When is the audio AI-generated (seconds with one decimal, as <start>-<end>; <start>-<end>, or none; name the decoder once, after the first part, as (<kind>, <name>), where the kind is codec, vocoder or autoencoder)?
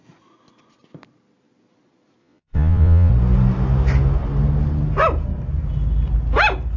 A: 2.2-3.1 (vocoder, Vocos)